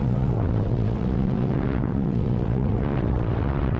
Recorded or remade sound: remade